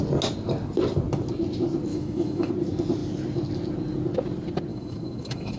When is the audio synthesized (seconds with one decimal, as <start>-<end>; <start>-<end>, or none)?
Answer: 1.9-2.5; 4.7-5.6